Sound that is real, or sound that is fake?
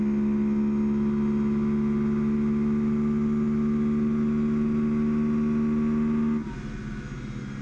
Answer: real